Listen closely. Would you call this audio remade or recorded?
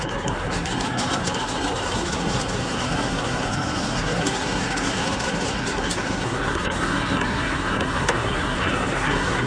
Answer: remade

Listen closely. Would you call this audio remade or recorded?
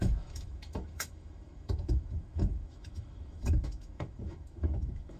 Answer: remade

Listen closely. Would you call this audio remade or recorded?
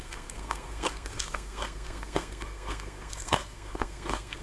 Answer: remade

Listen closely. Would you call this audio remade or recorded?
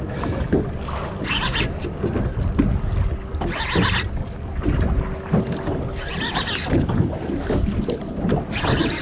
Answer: recorded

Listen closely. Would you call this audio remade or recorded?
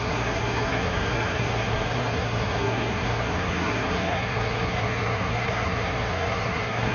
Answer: remade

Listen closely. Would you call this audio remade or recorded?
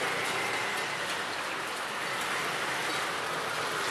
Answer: recorded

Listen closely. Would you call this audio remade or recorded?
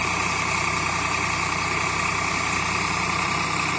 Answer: remade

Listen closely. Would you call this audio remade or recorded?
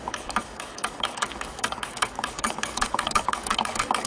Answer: remade